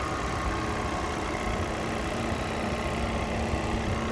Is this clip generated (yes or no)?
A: no